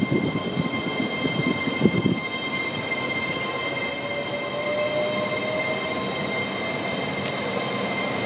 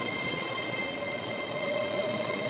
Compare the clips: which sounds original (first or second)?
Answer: first